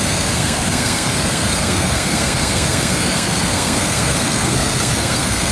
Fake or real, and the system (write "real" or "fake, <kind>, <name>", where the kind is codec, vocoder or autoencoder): fake, codec, SNAC